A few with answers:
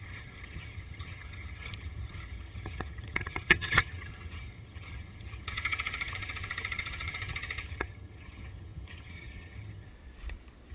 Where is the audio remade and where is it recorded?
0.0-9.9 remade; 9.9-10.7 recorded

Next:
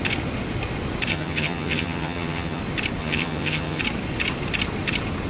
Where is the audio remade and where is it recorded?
0.0-1.1 recorded; 1.1-2.6 remade; 2.6-3.0 recorded; 3.0-3.8 remade; 3.8-5.3 recorded

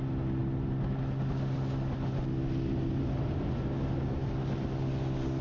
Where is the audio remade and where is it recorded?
0.0-5.4 recorded

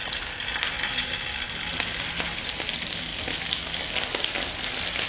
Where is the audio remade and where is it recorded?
0.0-5.1 recorded

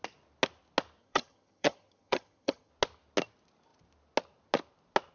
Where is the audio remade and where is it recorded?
0.0-1.0 recorded; 1.0-2.7 remade; 2.7-5.1 recorded

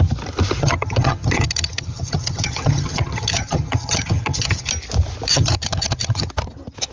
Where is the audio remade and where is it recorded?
0.0-0.6 recorded; 0.6-4.7 remade; 4.7-5.3 recorded; 5.3-6.3 remade; 6.3-6.9 recorded